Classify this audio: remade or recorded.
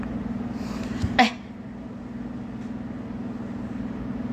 recorded